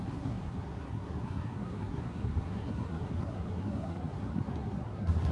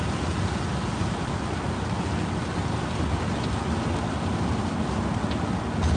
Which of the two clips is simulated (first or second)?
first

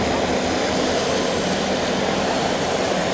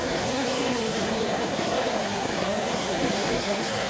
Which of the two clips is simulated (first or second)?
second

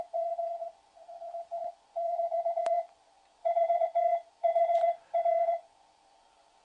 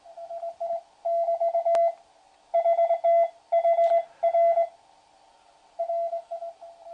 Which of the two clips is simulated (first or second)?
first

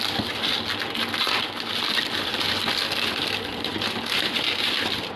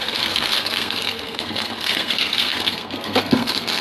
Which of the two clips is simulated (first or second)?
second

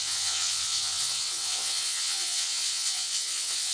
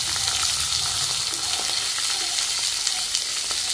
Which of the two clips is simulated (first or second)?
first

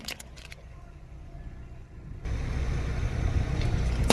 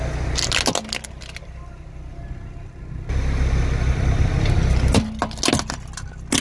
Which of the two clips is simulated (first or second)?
first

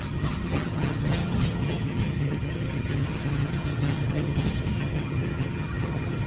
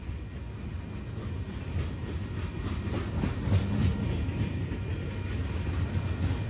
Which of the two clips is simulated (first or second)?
first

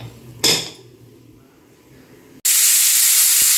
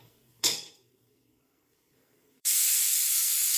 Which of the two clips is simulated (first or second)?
second